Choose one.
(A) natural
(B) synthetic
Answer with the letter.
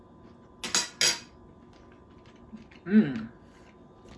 A